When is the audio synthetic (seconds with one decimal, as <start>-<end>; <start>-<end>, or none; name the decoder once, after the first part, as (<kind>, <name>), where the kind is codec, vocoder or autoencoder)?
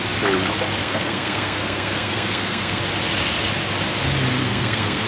0.8-2.8 (codec, SNAC); 4.4-5.1